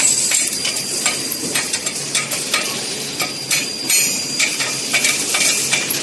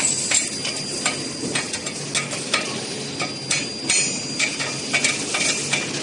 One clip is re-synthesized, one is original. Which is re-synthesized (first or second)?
first